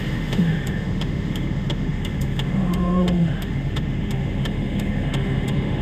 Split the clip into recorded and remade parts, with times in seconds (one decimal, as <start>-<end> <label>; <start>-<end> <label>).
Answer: 0.0-5.8 remade